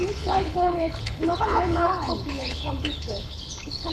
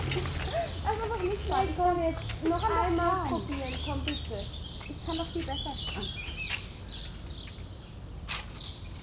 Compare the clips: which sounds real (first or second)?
second